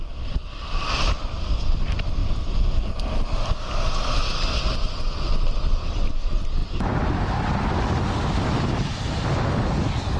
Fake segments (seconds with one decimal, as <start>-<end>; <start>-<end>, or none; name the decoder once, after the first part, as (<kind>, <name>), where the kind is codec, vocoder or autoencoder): none